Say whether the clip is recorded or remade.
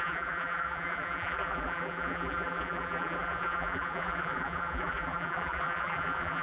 remade